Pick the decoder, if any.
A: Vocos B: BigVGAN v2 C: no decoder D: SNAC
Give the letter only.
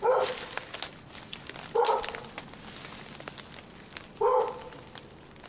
C